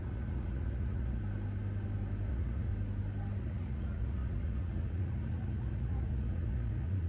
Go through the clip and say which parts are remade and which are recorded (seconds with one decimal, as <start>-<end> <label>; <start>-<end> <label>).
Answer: 0.0-1.2 remade; 1.2-2.3 recorded; 2.3-2.7 remade; 2.7-3.4 recorded; 3.4-7.1 remade